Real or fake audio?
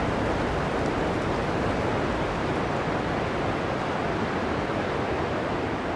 real